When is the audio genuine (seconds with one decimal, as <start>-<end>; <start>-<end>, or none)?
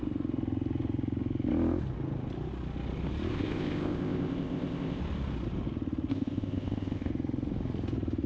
0.0-3.3; 5.0-6.1; 7.1-8.3